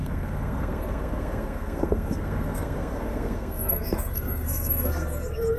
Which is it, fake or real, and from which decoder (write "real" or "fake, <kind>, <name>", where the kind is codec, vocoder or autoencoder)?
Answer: fake, codec, SNAC